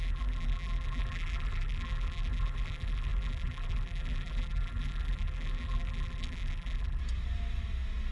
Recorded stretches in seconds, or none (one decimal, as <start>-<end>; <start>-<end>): 7.0-8.1